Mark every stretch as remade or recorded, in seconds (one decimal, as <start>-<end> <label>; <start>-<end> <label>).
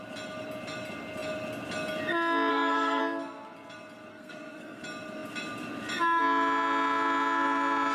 0.0-2.5 recorded; 2.5-3.0 remade; 3.0-4.1 recorded; 4.1-4.8 remade; 4.8-7.9 recorded